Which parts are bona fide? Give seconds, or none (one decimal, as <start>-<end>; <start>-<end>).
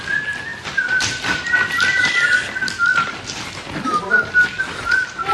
0.0-0.5; 2.3-5.3